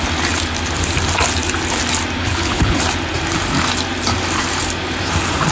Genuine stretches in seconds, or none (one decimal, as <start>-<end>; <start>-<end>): 0.0-2.2; 2.8-5.5